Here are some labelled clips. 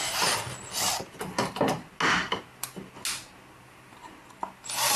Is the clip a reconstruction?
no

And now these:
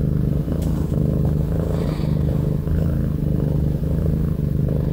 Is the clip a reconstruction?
no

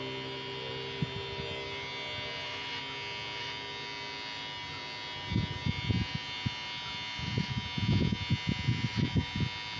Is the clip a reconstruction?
no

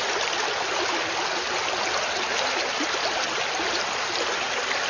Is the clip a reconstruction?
no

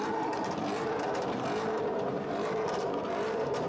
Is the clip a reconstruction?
yes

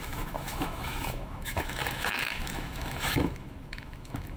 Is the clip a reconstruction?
yes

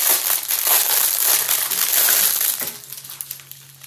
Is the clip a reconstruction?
no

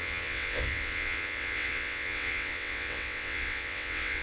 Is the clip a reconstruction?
yes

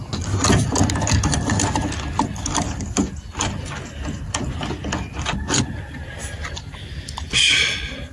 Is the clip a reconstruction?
no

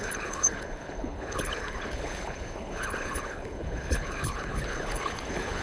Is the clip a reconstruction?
yes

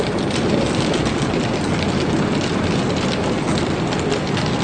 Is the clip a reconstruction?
no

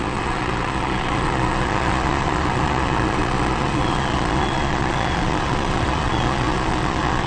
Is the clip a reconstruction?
yes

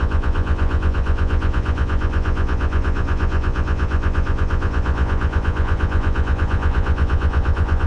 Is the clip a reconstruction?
yes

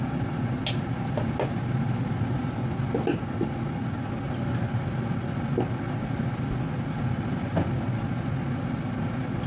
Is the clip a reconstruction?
no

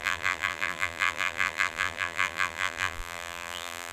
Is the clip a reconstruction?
yes